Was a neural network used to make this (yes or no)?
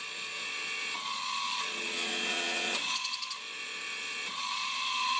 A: yes